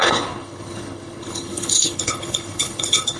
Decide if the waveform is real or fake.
fake